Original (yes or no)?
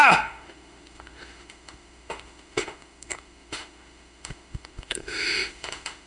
no